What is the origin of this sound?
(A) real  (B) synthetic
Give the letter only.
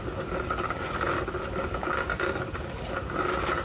A